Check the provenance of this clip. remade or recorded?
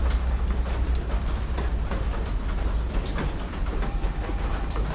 recorded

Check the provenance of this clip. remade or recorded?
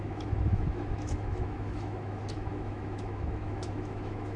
remade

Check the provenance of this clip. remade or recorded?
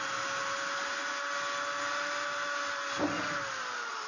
recorded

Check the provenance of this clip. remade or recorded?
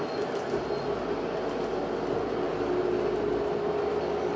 recorded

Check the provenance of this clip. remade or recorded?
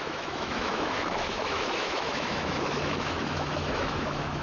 remade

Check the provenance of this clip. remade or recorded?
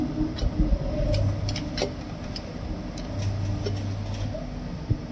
recorded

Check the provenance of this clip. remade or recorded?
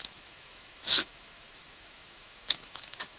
remade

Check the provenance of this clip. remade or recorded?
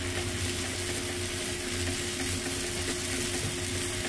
recorded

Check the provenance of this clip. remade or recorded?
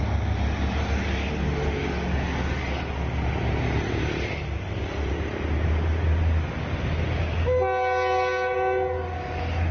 recorded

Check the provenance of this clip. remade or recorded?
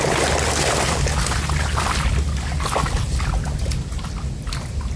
recorded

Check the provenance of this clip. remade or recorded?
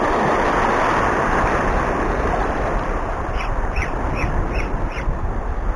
recorded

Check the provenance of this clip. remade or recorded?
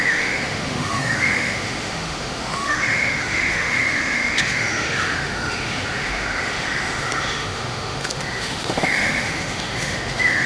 remade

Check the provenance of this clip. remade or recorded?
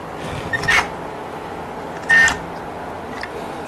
recorded